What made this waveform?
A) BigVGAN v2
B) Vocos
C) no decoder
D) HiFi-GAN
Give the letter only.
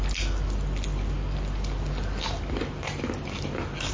C